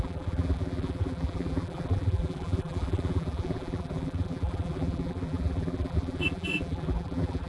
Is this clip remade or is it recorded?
remade